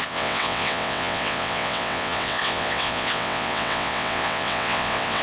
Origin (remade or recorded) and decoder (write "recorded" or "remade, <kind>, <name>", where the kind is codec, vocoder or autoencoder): remade, vocoder, WaveNeXt